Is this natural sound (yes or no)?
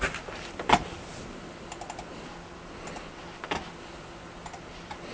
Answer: yes